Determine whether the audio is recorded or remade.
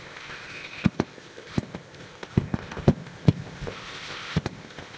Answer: remade